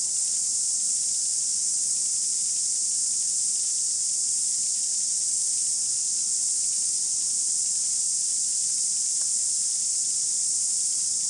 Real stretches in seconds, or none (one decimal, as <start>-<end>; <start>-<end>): 0.0-11.3